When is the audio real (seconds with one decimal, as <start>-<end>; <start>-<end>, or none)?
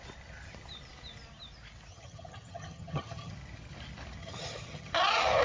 0.0-1.9; 3.3-4.2; 4.9-5.4